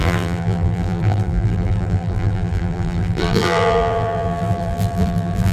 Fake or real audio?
fake